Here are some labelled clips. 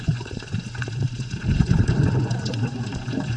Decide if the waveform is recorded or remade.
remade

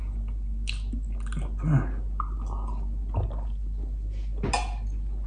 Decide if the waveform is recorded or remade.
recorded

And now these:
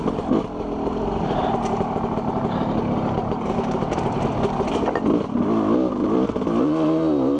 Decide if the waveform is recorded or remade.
recorded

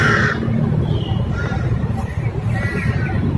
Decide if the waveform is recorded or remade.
recorded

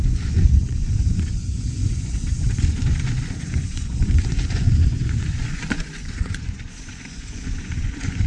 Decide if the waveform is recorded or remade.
remade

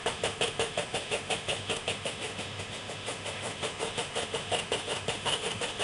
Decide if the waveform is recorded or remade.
remade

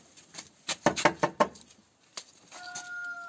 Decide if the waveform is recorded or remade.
recorded